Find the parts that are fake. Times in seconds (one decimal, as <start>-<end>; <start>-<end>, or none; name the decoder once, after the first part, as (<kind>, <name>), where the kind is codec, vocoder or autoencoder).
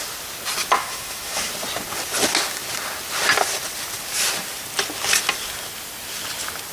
0.8-1.5 (autoencoder, DAC-VAE)